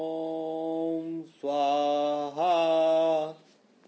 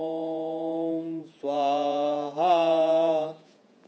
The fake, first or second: second